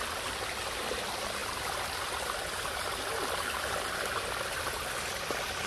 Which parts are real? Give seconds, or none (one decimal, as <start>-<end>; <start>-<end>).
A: 0.0-5.7